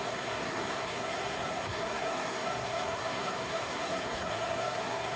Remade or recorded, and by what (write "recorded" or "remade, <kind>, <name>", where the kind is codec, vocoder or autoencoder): remade, codec, SNAC